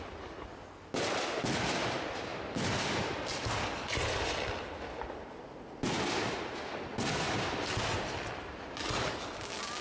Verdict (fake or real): real